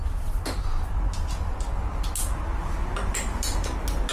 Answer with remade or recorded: recorded